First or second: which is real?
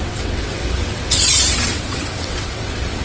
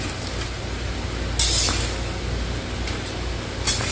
second